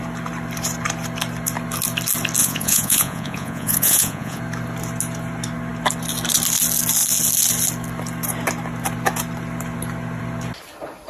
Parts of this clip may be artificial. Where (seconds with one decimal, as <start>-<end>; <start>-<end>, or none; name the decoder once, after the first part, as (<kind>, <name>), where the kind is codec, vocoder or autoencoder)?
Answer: 2.4-4.4 (vocoder, Vocos)

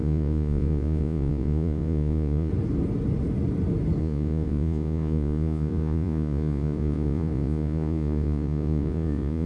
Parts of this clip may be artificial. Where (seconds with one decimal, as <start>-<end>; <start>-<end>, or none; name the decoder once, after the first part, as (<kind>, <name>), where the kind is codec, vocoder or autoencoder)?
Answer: 0.0-2.5 (vocoder, Vocos); 4.0-9.5

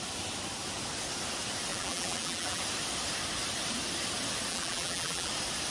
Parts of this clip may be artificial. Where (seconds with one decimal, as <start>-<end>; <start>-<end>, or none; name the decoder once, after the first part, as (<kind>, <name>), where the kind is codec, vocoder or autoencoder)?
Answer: 1.7-2.6 (vocoder, BigVGAN v2); 4.5-5.3

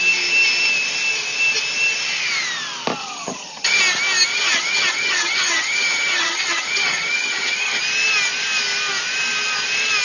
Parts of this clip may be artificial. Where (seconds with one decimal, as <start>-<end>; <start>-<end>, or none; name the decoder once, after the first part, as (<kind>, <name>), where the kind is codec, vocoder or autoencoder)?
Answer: 3.0-3.8 (vocoder, HiFi-GAN); 4.3-7.8

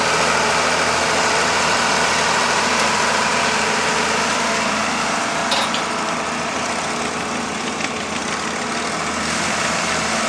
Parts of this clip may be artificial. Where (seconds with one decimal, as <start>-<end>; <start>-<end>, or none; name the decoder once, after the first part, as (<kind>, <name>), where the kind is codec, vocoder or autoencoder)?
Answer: 0.0-5.4 (vocoder, BigVGAN v2); 6.1-8.2; 9.2-10.3